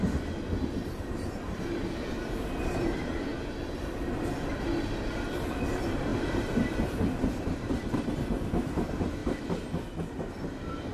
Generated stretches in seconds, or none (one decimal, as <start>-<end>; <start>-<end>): 0.0-3.3; 4.5-10.9